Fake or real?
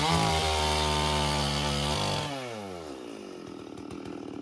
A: real